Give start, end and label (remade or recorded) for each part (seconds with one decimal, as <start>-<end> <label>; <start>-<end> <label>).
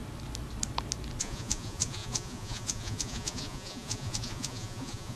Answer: 0.0-1.2 recorded; 1.2-5.2 remade